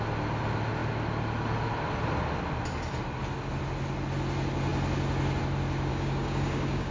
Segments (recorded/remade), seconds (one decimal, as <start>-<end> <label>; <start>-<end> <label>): 0.0-5.9 recorded; 5.9-6.9 remade